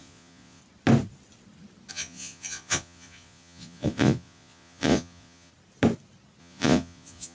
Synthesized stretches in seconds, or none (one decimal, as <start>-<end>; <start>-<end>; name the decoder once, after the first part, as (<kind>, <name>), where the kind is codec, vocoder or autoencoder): 0.0-0.6 (vocoder, Vocos); 1.9-5.5; 6.4-7.3